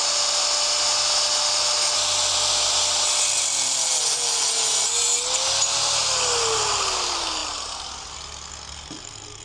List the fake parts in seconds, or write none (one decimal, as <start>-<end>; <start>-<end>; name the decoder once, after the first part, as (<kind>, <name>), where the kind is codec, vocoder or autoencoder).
none